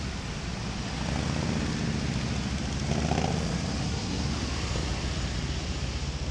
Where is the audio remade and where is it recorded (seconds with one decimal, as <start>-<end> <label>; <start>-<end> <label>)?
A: 0.0-3.8 recorded; 3.8-4.3 remade; 4.3-6.3 recorded